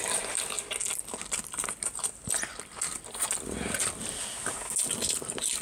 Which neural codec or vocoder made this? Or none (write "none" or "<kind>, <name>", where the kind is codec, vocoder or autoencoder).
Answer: none